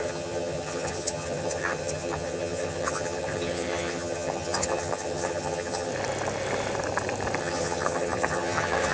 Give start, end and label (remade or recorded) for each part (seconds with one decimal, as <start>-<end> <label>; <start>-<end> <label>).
0.0-5.9 remade; 5.9-7.4 recorded; 7.4-8.9 remade